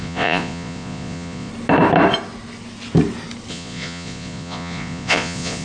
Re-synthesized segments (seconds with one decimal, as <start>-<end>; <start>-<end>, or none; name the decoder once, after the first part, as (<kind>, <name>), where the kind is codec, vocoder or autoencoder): 0.0-1.5 (vocoder, Vocos); 3.5-5.6